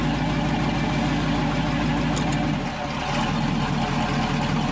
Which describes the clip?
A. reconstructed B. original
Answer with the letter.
B